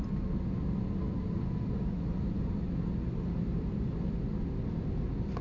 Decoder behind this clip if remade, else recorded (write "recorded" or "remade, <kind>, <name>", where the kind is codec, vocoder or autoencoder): recorded